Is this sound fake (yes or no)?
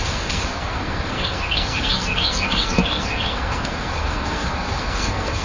yes